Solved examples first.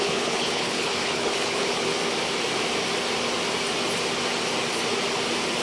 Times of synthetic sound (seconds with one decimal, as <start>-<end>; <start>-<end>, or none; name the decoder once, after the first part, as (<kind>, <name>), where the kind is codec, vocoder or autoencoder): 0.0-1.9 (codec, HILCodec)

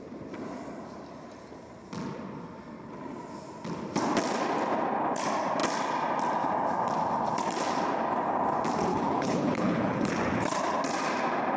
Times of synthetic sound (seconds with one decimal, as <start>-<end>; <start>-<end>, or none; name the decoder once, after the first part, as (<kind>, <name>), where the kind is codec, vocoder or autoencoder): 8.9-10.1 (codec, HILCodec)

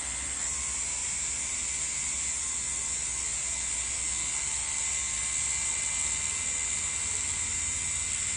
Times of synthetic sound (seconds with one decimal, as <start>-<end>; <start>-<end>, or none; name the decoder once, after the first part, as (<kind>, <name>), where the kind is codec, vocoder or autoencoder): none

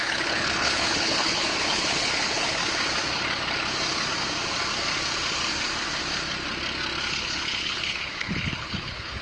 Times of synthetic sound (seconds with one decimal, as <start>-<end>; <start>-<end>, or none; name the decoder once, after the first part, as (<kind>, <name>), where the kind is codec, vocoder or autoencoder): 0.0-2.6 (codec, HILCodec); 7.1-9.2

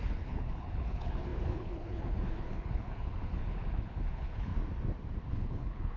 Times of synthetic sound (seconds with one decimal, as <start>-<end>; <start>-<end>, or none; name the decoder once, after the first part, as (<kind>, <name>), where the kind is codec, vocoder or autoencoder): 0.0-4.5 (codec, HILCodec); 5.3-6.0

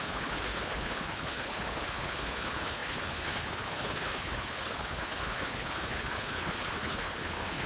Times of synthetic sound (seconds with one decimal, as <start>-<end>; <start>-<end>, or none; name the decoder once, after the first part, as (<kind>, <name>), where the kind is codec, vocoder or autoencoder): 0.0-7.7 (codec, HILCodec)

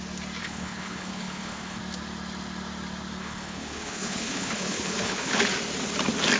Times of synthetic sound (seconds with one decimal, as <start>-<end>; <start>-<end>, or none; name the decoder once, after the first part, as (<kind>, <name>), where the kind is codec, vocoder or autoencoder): 0.4-1.8 (codec, HILCodec); 3.2-5.4